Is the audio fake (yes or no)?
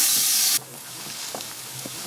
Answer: yes